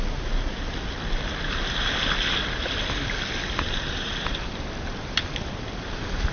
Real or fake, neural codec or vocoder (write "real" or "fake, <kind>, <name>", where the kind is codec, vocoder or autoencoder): real